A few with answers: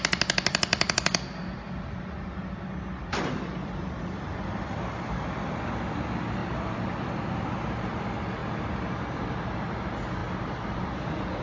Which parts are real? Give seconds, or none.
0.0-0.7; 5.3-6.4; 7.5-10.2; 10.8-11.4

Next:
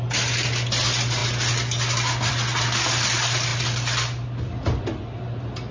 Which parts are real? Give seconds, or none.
0.0-5.7

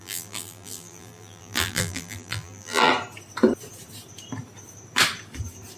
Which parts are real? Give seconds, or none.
2.9-5.8

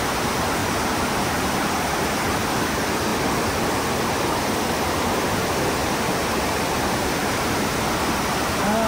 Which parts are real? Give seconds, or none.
0.0-0.6; 1.4-5.8; 7.8-8.9

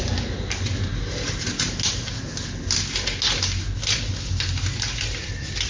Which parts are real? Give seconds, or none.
0.0-5.7

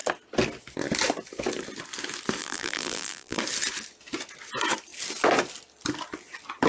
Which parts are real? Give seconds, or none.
0.0-2.4; 3.4-6.7

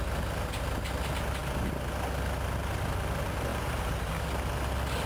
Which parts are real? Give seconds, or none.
0.0-3.5; 4.1-5.1

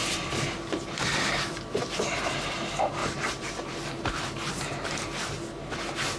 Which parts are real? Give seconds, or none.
3.0-4.5